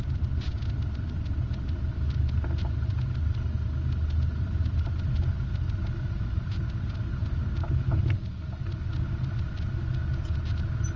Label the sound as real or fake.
real